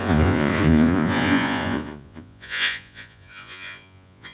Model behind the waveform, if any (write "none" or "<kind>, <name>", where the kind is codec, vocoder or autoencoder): vocoder, Vocos